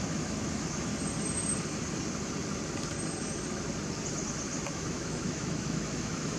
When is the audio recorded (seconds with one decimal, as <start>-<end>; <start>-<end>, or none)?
0.9-4.7